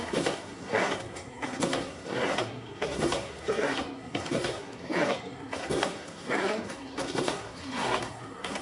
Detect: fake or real fake